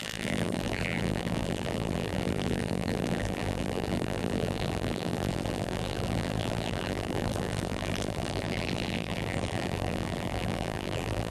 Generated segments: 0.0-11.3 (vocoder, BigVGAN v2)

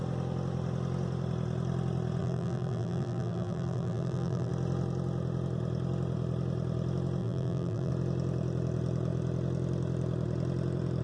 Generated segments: 2.2-4.5 (vocoder, BigVGAN v2); 7.2-7.9

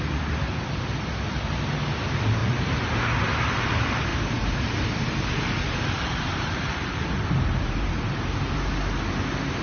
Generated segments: 2.4-2.9 (vocoder, BigVGAN v2); 4.1-8.4

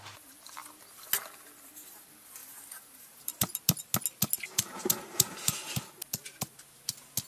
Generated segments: 2.4-3.8 (vocoder, BigVGAN v2); 4.8-5.5